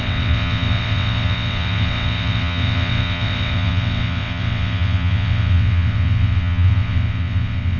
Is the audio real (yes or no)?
no